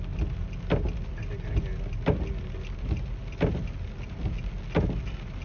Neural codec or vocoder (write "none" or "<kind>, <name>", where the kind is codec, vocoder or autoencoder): none